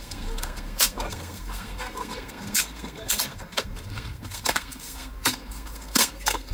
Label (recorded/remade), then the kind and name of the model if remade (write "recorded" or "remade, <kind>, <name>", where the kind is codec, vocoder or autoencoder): remade, codec, SNAC